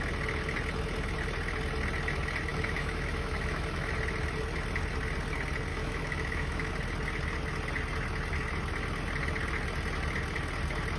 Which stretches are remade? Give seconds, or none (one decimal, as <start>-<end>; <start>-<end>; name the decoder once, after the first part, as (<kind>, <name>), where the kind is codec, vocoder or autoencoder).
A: 2.5-3.9 (autoencoder, DAC-VAE); 5.7-6.7